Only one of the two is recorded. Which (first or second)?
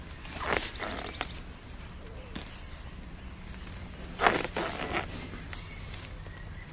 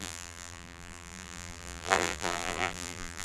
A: first